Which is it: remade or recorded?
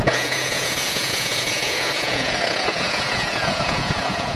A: remade